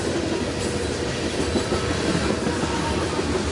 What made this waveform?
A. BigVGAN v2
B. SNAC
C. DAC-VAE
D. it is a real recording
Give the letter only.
D